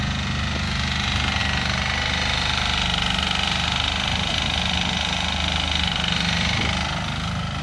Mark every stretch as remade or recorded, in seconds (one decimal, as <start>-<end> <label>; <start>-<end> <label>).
0.0-7.6 recorded